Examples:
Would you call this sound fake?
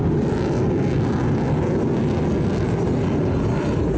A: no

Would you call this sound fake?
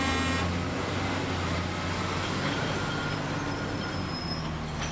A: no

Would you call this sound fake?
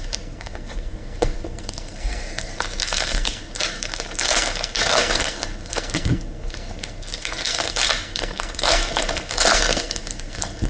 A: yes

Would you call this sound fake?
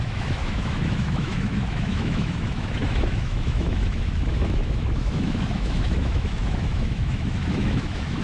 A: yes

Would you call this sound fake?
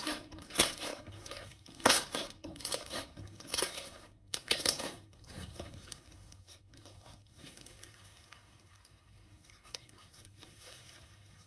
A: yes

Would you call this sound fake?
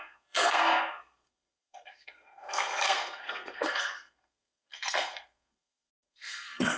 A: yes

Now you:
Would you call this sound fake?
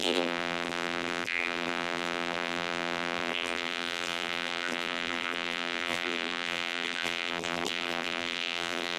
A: yes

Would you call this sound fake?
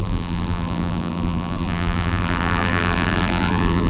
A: yes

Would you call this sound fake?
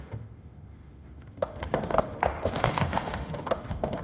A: yes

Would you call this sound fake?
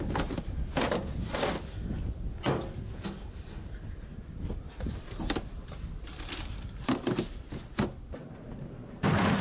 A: no